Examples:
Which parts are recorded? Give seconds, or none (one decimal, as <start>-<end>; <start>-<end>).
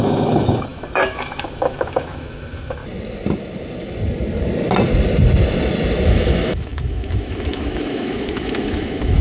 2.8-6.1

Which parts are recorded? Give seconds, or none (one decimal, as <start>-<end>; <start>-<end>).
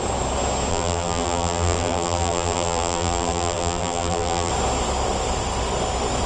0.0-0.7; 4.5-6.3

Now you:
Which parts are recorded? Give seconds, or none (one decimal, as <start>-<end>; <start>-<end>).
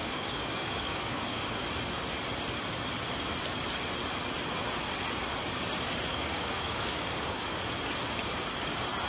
1.7-6.1; 7.6-9.1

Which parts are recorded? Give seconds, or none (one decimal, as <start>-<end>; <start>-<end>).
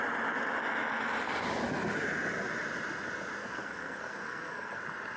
0.0-3.4; 4.8-5.2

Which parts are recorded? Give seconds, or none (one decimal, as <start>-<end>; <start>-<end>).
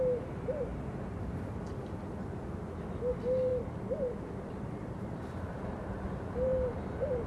0.0-0.7; 1.6-3.5; 6.1-6.5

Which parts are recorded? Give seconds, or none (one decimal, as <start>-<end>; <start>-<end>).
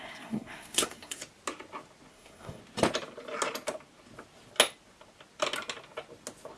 1.2-2.1; 2.6-6.6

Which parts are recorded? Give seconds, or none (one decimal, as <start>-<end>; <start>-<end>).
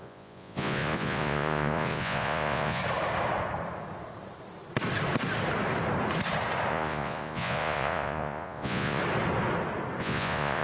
2.8-6.7; 9.0-10.0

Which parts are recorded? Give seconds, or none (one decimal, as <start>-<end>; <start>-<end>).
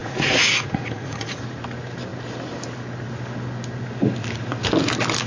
1.4-5.3